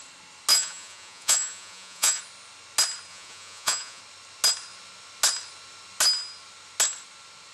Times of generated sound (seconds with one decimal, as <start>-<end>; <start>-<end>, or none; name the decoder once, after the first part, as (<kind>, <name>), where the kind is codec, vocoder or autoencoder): 0.5-2.2 (vocoder, Vocos); 3.1-4.0